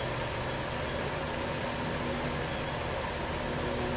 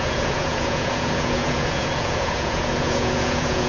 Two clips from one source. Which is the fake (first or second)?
second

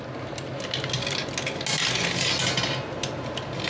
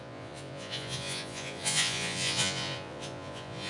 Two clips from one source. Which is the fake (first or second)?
second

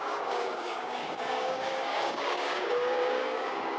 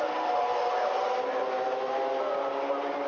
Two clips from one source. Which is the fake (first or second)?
first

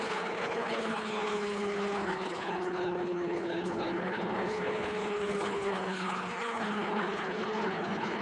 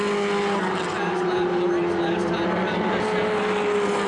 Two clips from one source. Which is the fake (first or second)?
first